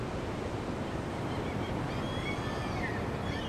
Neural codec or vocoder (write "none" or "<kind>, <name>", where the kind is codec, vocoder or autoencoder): vocoder, BigVGAN v2